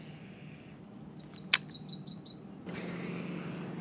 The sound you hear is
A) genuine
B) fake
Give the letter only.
A